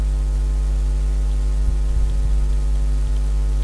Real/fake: real